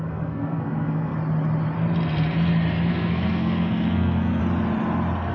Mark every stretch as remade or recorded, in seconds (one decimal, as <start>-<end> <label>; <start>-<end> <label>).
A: 0.0-1.1 remade; 1.1-2.9 recorded; 2.9-4.4 remade; 4.4-5.3 recorded